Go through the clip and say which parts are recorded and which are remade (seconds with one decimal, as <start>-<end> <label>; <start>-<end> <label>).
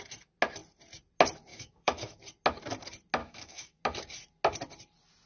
0.0-1.5 recorded; 1.5-2.2 remade; 2.2-3.2 recorded; 3.2-3.8 remade; 3.8-5.3 recorded